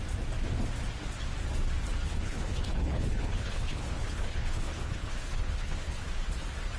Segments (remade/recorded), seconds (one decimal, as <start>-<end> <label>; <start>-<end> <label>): 0.0-2.0 recorded; 2.0-6.1 remade; 6.1-6.8 recorded